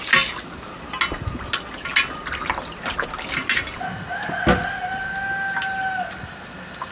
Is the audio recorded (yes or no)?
yes